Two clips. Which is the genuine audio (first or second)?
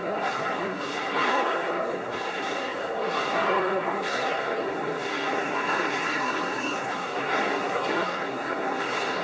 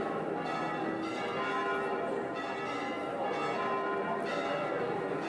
second